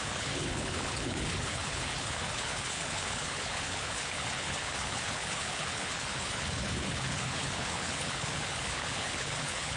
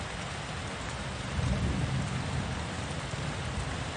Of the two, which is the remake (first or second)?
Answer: first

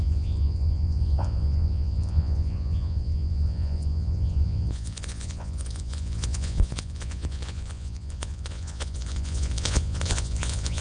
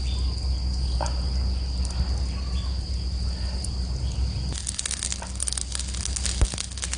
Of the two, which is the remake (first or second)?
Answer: first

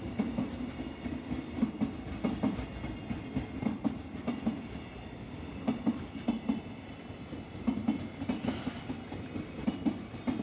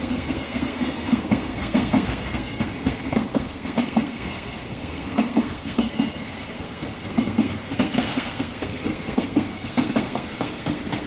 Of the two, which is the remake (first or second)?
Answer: second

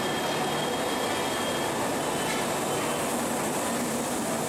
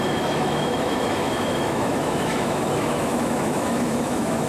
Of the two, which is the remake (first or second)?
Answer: second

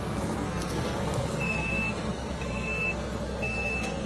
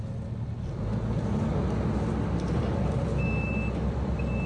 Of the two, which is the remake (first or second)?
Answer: first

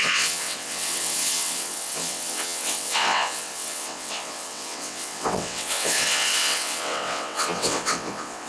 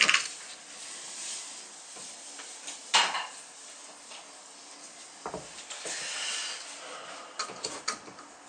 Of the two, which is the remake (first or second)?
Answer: first